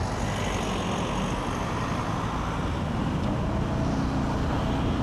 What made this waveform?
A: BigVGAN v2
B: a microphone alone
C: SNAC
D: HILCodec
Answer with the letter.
B